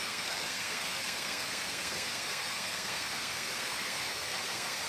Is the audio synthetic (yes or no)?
yes